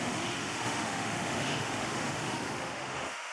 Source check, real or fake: fake